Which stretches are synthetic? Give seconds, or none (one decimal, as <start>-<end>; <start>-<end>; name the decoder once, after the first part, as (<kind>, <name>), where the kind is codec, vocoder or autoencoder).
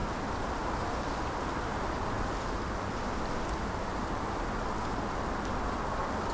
none